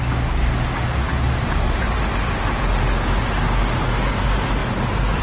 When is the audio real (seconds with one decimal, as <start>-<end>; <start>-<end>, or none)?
0.0-5.2